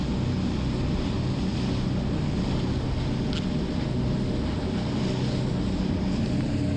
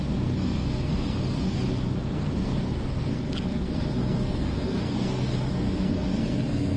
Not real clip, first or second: second